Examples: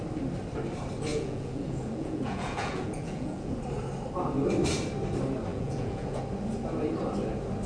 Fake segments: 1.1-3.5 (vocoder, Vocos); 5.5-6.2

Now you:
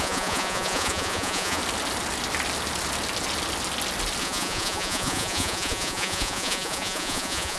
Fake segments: 0.0-1.6 (vocoder, Vocos); 4.2-7.6

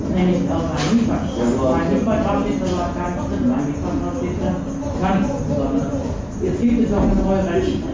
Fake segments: none